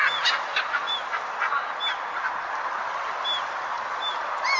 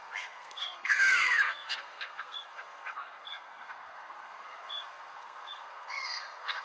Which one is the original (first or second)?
first